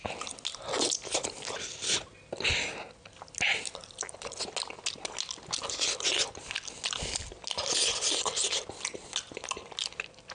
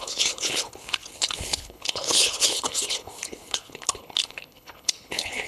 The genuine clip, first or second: first